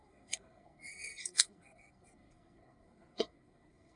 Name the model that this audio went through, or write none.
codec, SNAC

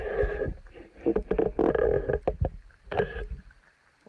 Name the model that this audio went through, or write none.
none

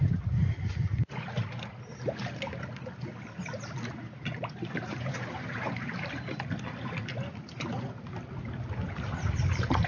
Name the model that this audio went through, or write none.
none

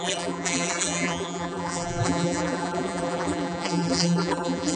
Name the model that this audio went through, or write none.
vocoder, BigVGAN v2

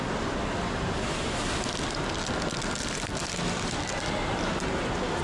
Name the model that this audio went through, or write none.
none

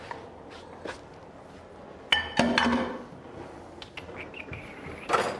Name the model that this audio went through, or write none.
none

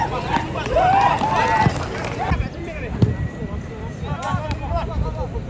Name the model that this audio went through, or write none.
none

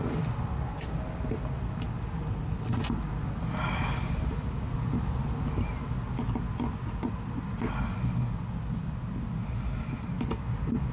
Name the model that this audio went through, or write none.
none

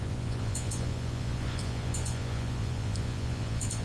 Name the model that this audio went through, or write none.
vocoder, Vocos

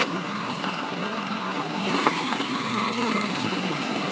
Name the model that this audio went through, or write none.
codec, SNAC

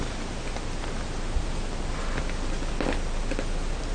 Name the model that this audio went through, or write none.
none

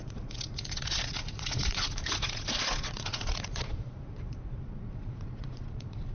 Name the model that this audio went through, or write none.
vocoder, Vocos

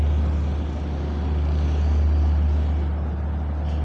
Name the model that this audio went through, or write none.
none